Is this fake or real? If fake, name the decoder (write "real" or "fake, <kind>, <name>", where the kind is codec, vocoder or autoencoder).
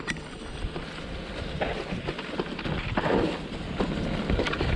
real